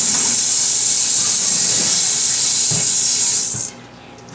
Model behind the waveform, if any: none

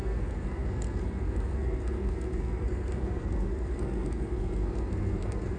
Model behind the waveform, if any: codec, SNAC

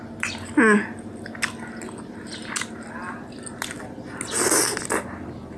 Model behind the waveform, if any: none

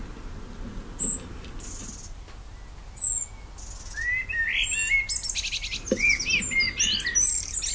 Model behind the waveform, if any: none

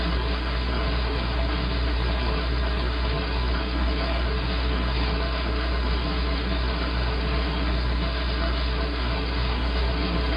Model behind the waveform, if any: codec, SNAC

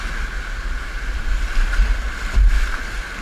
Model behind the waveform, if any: none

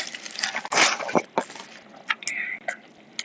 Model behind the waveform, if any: none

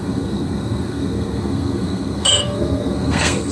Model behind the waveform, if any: codec, SNAC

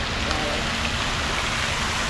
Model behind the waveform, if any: none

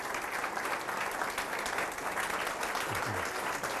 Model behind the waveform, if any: none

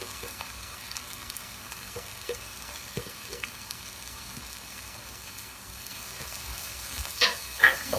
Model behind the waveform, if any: codec, SNAC